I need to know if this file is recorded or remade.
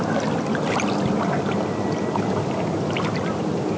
recorded